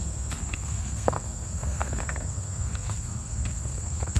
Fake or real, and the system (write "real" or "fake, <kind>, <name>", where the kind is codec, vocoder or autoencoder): fake, codec, SNAC